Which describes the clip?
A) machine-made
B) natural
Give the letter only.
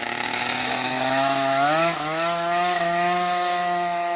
A